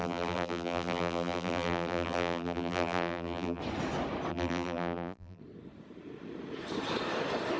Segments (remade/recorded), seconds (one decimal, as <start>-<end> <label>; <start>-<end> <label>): 0.0-3.6 remade; 3.6-4.3 recorded; 4.3-5.4 remade; 5.4-7.6 recorded